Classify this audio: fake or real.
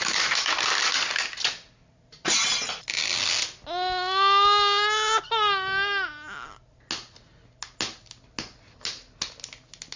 real